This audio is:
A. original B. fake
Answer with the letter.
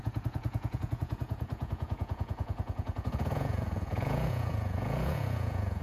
B